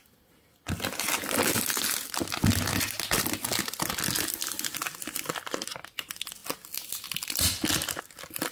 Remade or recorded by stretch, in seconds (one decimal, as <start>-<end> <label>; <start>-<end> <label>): 0.0-8.5 recorded